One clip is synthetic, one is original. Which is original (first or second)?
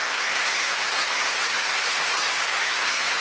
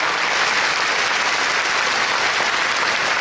second